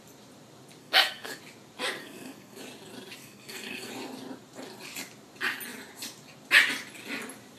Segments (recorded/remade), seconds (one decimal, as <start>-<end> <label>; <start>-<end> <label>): 0.0-0.8 recorded; 0.8-1.4 remade; 1.4-2.0 recorded; 2.0-2.6 remade; 2.6-3.2 recorded; 3.2-3.9 remade; 3.9-7.6 recorded

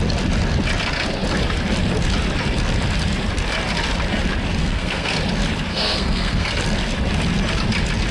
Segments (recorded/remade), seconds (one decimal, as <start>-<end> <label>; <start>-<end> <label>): 0.0-4.6 recorded; 4.6-5.1 remade; 5.1-5.7 recorded; 5.7-6.5 remade; 6.5-8.1 recorded

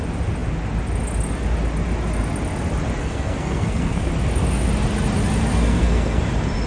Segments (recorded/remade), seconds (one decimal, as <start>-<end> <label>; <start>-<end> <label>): 0.0-3.0 recorded; 3.0-4.1 remade; 4.1-5.5 recorded; 5.5-6.2 remade; 6.2-6.7 recorded

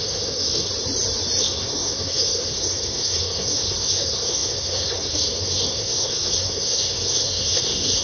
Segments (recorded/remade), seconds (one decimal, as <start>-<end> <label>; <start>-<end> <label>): 0.0-0.7 remade; 0.7-1.4 recorded; 1.4-8.0 remade

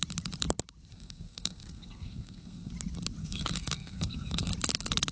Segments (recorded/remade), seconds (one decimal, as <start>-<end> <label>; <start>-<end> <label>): 0.0-0.9 recorded; 0.9-2.7 remade; 2.7-3.2 recorded; 3.2-4.5 remade; 4.5-5.1 recorded

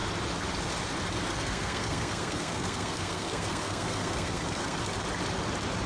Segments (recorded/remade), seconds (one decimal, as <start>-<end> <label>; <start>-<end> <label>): 0.0-1.3 recorded; 1.3-4.8 remade; 4.8-5.9 recorded